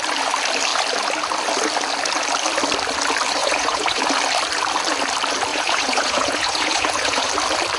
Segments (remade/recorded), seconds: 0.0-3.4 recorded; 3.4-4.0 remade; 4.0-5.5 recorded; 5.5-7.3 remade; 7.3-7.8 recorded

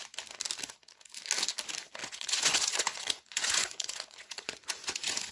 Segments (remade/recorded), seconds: 0.0-2.0 recorded; 2.0-5.3 remade

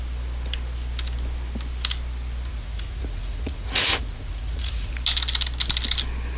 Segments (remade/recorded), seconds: 0.0-2.5 recorded; 2.5-4.9 remade; 4.9-6.4 recorded